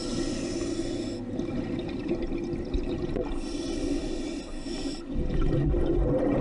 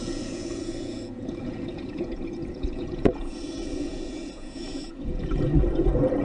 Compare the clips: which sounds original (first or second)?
first